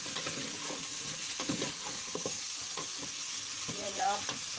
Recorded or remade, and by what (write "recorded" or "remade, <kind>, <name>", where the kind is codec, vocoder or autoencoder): remade, vocoder, Vocos